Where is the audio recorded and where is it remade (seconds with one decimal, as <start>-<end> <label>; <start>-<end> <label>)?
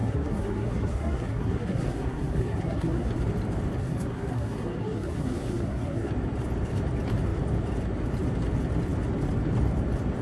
0.0-3.1 remade; 3.1-3.8 recorded; 3.8-6.1 remade; 6.1-10.2 recorded